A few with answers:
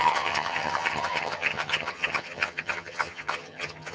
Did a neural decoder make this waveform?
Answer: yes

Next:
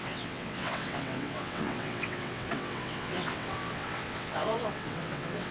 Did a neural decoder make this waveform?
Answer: yes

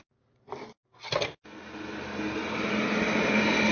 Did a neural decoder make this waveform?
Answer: no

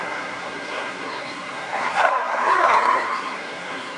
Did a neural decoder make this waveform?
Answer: yes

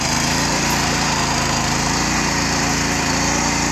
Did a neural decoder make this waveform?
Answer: yes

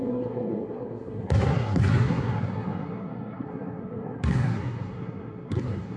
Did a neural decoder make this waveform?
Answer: yes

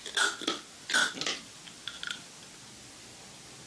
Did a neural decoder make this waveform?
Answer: no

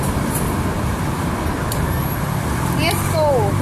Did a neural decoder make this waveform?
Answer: no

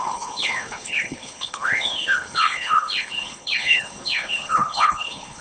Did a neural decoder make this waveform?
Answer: yes